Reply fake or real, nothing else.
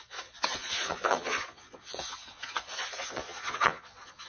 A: fake